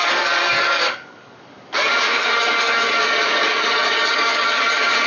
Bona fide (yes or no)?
no